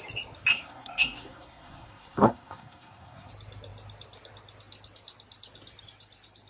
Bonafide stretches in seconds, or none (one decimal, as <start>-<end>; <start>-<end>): 0.0-0.5; 3.3-6.5